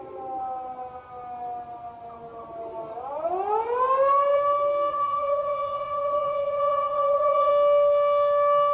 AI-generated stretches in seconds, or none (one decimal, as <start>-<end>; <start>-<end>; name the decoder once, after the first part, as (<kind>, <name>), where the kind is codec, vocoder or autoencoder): 4.9-7.5 (vocoder, Vocos)